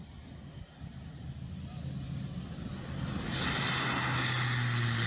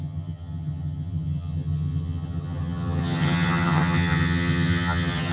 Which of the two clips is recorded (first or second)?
first